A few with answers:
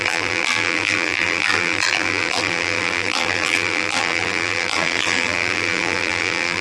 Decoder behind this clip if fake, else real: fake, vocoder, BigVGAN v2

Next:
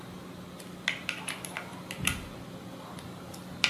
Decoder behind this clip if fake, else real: real